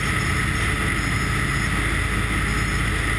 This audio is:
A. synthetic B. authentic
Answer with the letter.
B